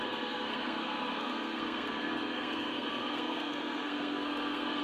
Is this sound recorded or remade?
remade